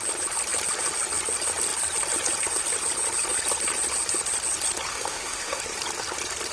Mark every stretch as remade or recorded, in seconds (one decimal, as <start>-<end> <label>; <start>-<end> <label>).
0.0-4.9 recorded; 4.9-5.6 remade; 5.6-6.5 recorded